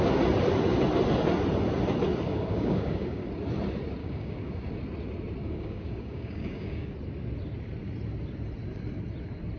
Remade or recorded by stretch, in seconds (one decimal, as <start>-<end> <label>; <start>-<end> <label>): 0.0-2.3 recorded; 2.3-3.3 remade; 3.3-4.0 recorded; 4.0-4.7 remade; 4.7-5.4 recorded; 5.4-6.9 remade; 6.9-9.6 recorded